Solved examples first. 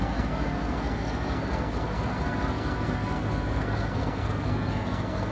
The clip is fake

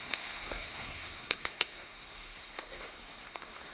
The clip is fake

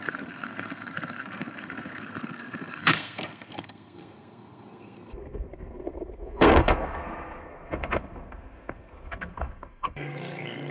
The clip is fake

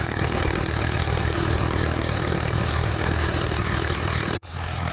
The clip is fake